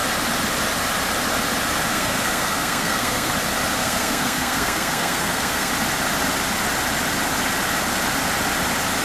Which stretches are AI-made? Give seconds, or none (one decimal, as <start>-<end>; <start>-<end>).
1.9-3.3; 3.8-5.7